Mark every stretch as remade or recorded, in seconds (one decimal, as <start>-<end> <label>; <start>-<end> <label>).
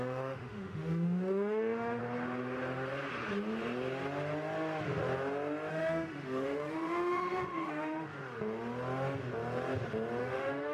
0.0-2.0 remade; 2.0-5.7 recorded; 5.7-8.2 remade; 8.2-10.2 recorded; 10.2-10.7 remade